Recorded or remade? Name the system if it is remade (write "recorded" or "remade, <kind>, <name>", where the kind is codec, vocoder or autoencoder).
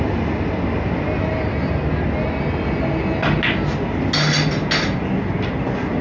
recorded